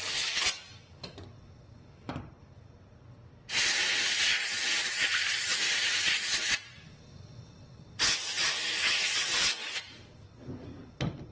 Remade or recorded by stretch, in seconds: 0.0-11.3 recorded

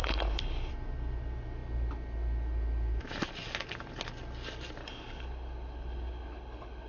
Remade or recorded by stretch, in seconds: 0.0-0.7 remade; 0.7-4.8 recorded; 4.8-6.9 remade

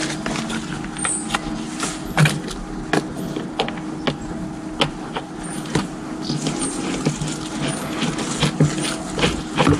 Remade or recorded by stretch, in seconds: 0.0-9.8 recorded

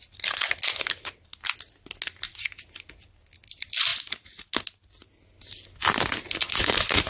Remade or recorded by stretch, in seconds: 0.0-7.1 recorded

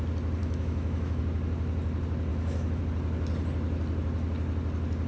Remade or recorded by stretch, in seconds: 0.0-0.4 recorded; 0.4-1.2 remade; 1.2-2.3 recorded; 2.3-2.8 remade; 2.8-5.1 recorded